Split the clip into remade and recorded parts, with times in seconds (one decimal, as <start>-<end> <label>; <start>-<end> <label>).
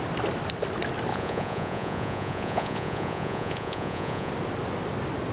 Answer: 0.0-1.1 recorded; 1.1-4.3 remade; 4.3-5.3 recorded